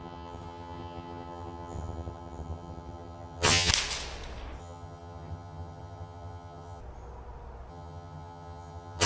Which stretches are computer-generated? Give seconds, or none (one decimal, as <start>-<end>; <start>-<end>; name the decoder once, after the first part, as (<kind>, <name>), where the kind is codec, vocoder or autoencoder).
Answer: 0.0-3.7 (vocoder, HiFi-GAN); 4.6-6.8; 7.7-9.1